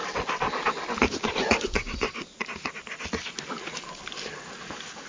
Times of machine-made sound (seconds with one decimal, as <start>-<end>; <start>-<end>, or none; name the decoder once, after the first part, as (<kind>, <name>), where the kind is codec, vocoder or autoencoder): none